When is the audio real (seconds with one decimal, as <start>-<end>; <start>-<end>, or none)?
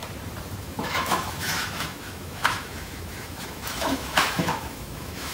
0.0-0.6